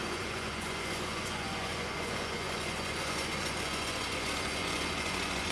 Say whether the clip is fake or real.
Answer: fake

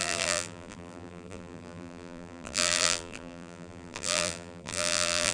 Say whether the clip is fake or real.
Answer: fake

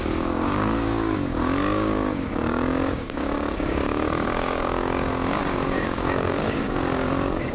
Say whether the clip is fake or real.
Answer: fake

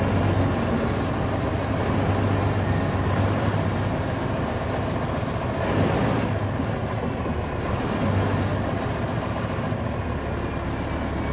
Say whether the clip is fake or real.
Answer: real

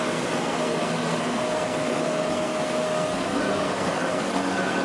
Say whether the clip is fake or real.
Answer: fake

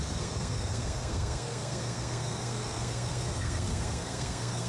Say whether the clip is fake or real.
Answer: fake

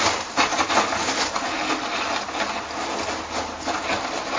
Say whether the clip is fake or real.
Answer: real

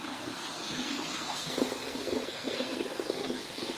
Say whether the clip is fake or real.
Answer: fake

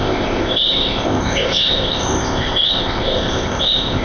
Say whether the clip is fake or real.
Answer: fake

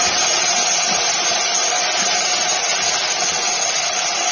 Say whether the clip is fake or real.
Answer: real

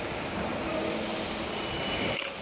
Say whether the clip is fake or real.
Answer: real